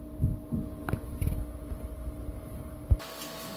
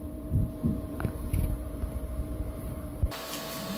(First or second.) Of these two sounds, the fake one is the second